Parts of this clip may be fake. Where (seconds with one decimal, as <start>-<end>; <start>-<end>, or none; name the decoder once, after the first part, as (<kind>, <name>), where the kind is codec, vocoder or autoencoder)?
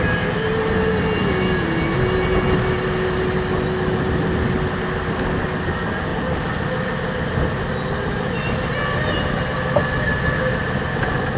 none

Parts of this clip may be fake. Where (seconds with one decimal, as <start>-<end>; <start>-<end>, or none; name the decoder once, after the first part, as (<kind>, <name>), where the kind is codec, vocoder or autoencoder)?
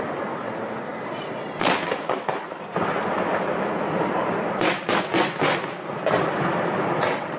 none